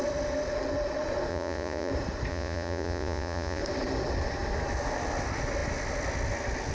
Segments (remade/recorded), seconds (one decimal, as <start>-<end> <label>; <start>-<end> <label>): 0.0-1.3 recorded; 1.3-1.9 remade; 1.9-2.3 recorded; 2.3-3.6 remade; 3.6-6.7 recorded